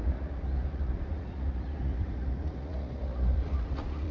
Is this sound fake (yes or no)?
yes